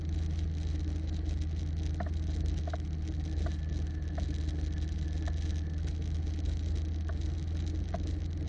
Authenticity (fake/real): real